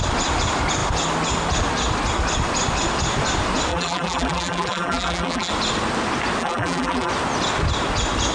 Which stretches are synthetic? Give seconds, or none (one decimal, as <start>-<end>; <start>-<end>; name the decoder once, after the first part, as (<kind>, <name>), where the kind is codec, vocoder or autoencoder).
3.7-5.5 (vocoder, BigVGAN v2); 6.4-7.1